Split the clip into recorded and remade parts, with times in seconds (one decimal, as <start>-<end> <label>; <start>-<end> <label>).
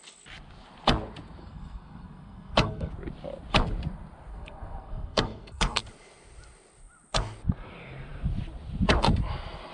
0.0-1.4 recorded; 1.4-2.9 remade; 2.9-4.3 recorded; 4.3-5.8 remade; 5.8-9.7 recorded